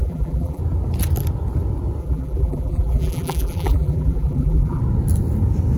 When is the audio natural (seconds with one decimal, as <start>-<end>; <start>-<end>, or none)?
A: 0.6-2.0; 4.8-5.8